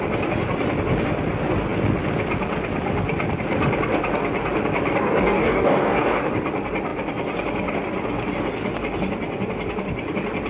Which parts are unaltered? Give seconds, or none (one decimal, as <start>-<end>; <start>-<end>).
0.0-5.0; 6.3-10.5